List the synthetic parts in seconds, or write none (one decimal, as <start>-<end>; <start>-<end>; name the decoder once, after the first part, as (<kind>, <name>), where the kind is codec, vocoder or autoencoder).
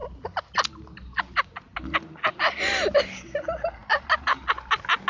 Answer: none